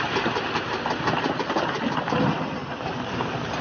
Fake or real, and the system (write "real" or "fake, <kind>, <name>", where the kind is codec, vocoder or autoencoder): real